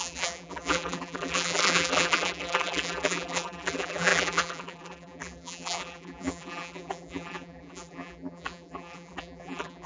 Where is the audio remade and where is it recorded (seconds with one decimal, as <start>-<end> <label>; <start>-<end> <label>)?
0.0-9.9 remade